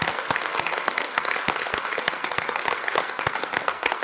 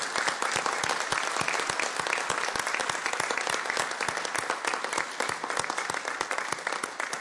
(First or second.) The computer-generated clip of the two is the first